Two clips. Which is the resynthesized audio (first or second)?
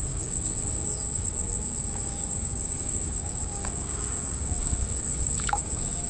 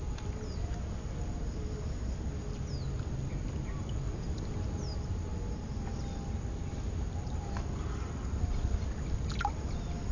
first